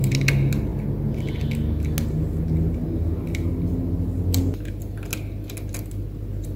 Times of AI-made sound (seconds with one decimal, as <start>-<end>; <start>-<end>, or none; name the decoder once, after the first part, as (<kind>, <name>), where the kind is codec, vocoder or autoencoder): none